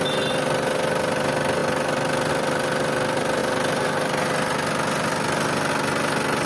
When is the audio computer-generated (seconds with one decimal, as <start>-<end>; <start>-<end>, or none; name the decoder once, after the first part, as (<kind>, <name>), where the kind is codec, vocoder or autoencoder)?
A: none